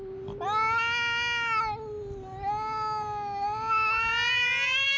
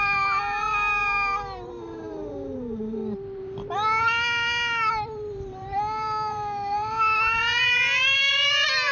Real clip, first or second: first